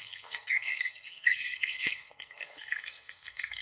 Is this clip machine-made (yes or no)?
yes